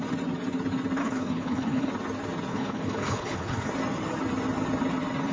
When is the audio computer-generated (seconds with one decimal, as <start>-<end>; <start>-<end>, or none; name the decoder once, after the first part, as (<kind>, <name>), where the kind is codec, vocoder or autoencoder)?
1.0-1.9 (codec, HILCodec); 2.5-3.7